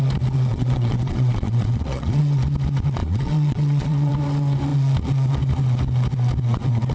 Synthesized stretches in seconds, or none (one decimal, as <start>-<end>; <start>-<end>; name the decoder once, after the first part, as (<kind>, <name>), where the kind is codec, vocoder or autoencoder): 0.5-2.2 (vocoder, Vocos); 3.0-4.1